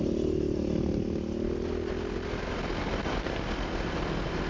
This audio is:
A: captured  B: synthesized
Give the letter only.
A